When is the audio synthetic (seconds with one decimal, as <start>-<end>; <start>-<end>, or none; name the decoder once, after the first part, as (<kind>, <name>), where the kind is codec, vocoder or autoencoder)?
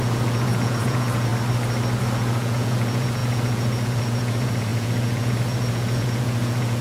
0.0-1.3 (vocoder, Vocos); 2.0-6.8